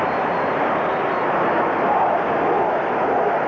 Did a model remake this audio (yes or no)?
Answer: no